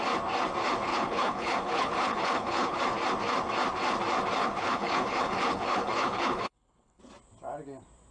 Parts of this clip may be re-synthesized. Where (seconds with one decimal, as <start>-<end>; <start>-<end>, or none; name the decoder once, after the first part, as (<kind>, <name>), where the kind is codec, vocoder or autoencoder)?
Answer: 0.9-2.8 (codec, HILCodec); 4.4-7.0